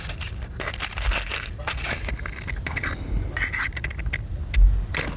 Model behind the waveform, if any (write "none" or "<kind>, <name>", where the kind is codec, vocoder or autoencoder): none